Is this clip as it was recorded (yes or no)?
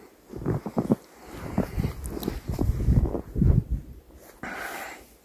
yes